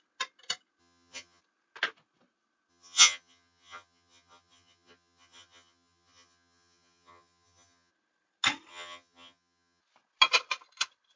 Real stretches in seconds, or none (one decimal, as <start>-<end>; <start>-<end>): 0.0-0.8; 1.4-2.7; 7.9-8.7; 9.8-11.2